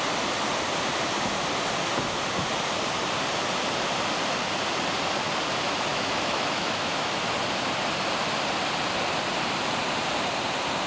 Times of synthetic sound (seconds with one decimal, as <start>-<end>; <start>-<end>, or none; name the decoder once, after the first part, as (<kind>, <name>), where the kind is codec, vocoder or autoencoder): 5.9-7.3 (autoencoder, DAC-VAE)